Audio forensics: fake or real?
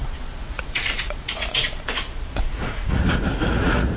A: fake